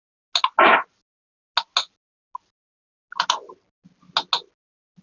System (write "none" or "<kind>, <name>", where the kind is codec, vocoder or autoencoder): none